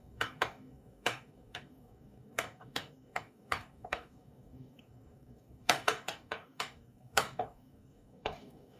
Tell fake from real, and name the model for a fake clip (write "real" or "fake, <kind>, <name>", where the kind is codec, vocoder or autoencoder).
fake, codec, DAC